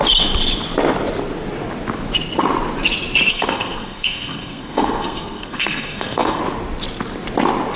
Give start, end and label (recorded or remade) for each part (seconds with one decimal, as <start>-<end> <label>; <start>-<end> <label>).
0.0-3.3 recorded; 3.3-6.4 remade; 6.4-7.8 recorded